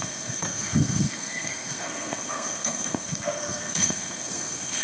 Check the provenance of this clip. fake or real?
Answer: fake